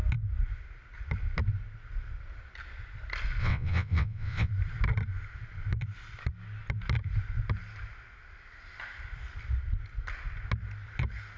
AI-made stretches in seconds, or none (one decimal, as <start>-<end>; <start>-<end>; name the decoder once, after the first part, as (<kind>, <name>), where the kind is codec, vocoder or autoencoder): 3.4-4.5 (vocoder, WaveNeXt)